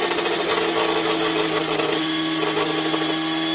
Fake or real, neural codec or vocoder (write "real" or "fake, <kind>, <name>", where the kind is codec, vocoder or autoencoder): real